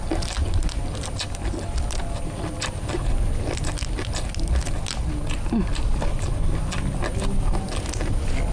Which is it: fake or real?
real